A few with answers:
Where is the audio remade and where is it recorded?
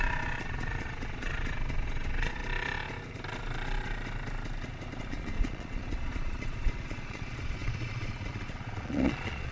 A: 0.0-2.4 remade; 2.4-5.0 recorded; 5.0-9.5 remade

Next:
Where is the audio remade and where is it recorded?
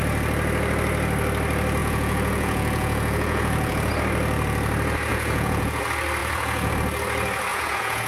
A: 0.0-1.8 recorded; 1.8-3.9 remade; 3.9-5.1 recorded; 5.1-5.8 remade; 5.8-6.2 recorded; 6.2-6.7 remade; 6.7-7.5 recorded; 7.5-8.1 remade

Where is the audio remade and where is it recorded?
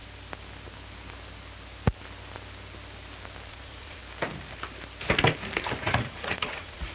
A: 0.0-3.5 recorded; 3.5-4.0 remade; 4.0-5.8 recorded; 5.8-6.9 remade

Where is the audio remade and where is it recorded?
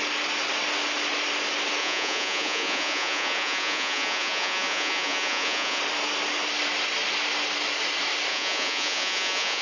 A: 0.0-1.8 recorded; 1.8-5.8 remade; 5.8-8.3 recorded; 8.3-9.6 remade